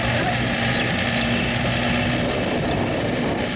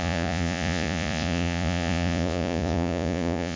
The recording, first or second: first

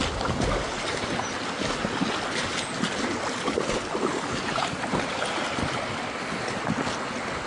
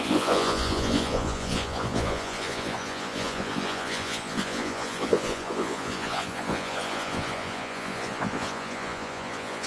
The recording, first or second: first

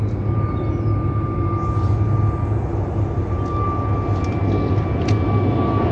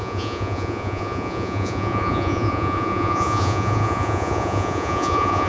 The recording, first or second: first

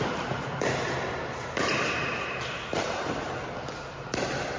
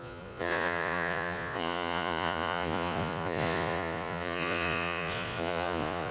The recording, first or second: first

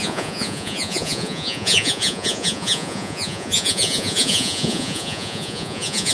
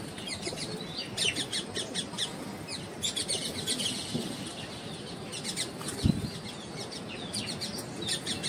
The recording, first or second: second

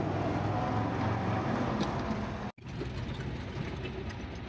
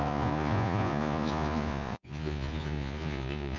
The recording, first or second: first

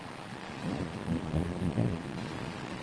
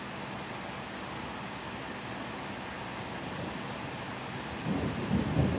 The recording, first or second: second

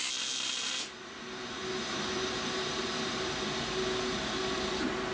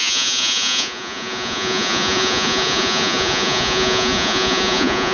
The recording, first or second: first